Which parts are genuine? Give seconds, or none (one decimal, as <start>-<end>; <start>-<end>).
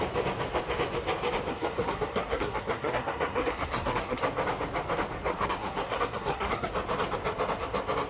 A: 0.0-1.5; 4.2-5.3; 6.7-8.1